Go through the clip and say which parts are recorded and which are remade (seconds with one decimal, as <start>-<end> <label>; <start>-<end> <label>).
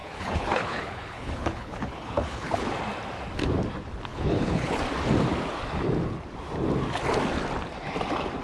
0.0-2.7 remade; 2.7-4.1 recorded; 4.1-4.8 remade; 4.8-8.4 recorded